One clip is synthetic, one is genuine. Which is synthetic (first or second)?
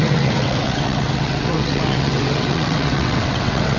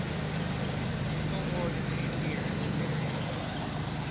first